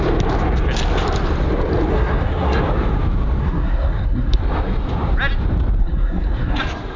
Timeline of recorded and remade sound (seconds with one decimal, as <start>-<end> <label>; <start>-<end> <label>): 0.0-1.9 recorded; 1.9-2.6 remade; 2.6-3.4 recorded; 3.4-4.4 remade; 4.4-5.8 recorded; 5.8-6.6 remade; 6.6-7.0 recorded